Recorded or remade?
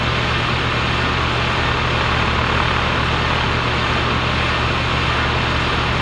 recorded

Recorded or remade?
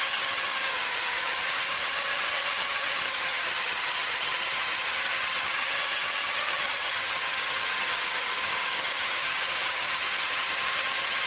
remade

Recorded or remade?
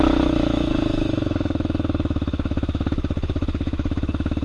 remade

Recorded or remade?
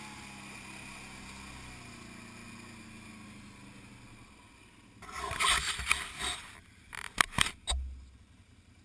recorded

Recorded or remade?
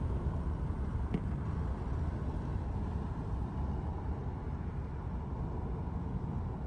recorded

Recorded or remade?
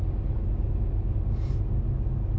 recorded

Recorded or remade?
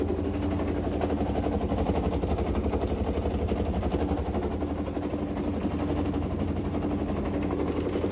recorded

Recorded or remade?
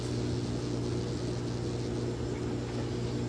recorded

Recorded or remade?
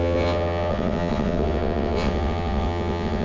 remade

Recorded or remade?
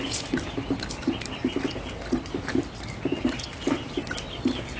recorded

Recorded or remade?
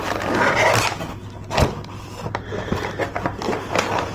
recorded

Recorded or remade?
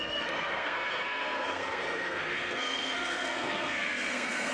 remade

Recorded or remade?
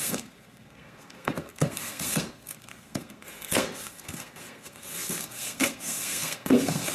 remade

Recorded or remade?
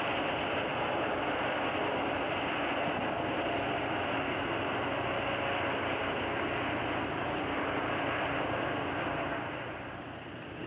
recorded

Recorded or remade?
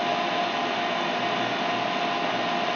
recorded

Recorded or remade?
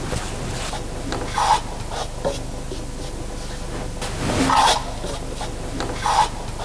recorded